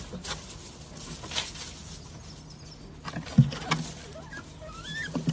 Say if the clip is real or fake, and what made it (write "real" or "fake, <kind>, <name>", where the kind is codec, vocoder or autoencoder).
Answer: real